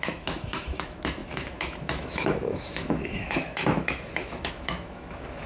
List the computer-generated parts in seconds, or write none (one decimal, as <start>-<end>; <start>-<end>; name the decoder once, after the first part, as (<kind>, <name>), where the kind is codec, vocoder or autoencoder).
0.0-5.5 (autoencoder, DAC-VAE)

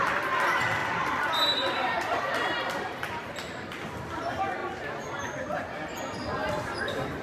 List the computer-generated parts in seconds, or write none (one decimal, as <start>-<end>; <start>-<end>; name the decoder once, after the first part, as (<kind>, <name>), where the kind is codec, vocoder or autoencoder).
0.8-1.3 (vocoder, BigVGAN v2); 1.8-2.8; 6.4-7.2

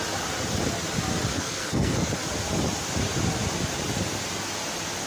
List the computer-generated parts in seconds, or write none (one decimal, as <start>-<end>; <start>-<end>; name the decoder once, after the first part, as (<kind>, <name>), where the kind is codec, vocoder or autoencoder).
1.3-2.1 (codec, SNAC)

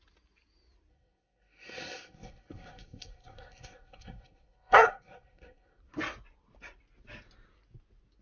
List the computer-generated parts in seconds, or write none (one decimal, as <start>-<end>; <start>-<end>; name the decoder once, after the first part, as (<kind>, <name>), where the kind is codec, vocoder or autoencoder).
0.9-5.8 (codec, SNAC)

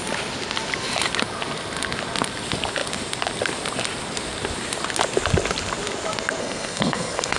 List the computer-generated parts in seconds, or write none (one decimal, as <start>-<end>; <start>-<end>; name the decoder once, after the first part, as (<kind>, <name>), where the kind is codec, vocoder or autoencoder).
6.4-7.4 (codec, SNAC)